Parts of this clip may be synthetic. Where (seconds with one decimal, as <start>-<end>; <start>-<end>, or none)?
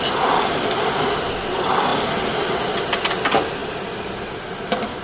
none